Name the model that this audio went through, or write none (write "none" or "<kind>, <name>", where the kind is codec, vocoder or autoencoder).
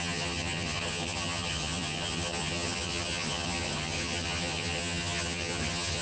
vocoder, HiFi-GAN